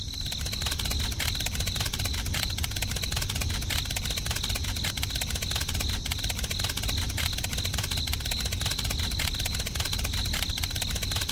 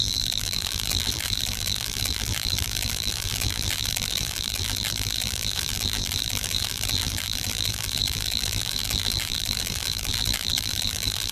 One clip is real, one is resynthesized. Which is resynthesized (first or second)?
second